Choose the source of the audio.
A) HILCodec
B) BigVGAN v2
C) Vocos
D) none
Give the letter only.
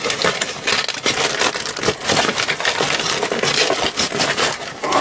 D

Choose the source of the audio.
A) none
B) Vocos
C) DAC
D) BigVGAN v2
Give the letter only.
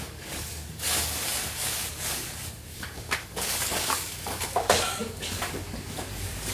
C